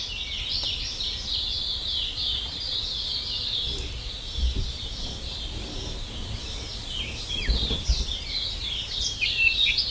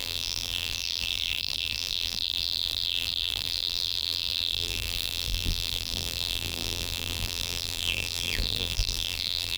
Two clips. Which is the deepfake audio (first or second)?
second